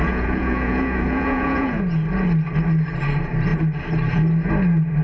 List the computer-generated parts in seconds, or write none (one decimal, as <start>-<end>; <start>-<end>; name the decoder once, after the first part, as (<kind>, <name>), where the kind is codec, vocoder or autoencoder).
0.0-1.8 (vocoder, Vocos)